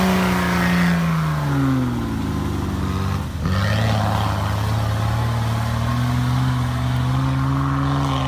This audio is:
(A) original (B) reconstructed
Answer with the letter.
A